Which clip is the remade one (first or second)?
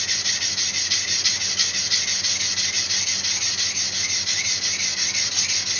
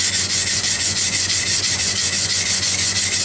second